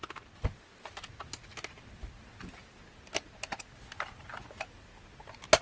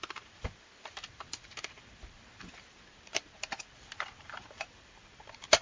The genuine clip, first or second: first